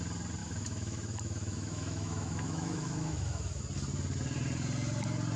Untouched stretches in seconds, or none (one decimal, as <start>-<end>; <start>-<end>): 0.0-0.4; 3.6-5.4